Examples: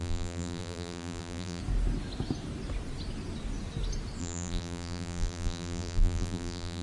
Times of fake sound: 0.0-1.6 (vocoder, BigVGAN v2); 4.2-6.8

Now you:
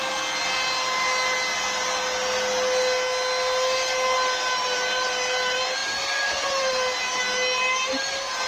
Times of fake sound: none

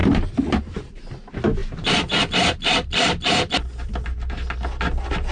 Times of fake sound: none

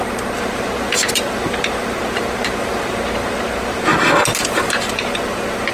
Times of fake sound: 0.0-3.9 (vocoder, BigVGAN v2); 4.4-5.7

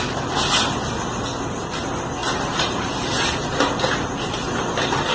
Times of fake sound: 2.2-3.7 (vocoder, BigVGAN v2)

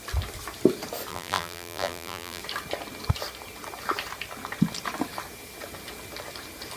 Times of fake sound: 1.1-2.4 (vocoder, BigVGAN v2)